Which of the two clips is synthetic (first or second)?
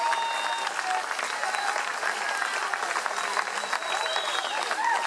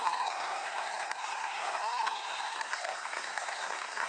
second